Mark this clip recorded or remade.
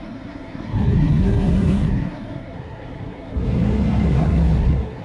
remade